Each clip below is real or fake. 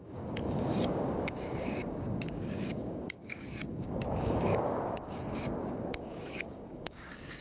fake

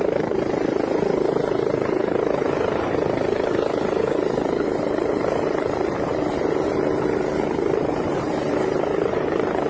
fake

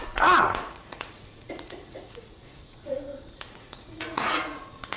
fake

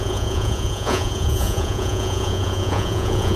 fake